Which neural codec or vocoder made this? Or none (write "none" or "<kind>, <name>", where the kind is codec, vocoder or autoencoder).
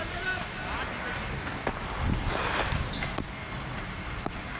none